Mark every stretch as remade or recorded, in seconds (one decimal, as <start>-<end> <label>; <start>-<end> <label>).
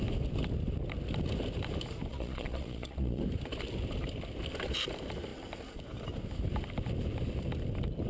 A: 0.0-2.1 recorded; 2.1-3.2 remade; 3.2-8.1 recorded